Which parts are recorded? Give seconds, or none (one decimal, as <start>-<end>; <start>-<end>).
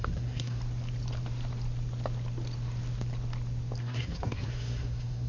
0.6-3.8